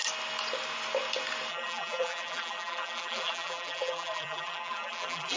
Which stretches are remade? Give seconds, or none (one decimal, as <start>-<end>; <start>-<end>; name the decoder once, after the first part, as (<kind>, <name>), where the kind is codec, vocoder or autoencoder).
1.5-5.4 (vocoder, BigVGAN v2)